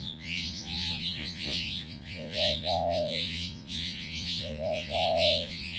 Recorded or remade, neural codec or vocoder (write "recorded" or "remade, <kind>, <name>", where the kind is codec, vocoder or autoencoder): remade, vocoder, Vocos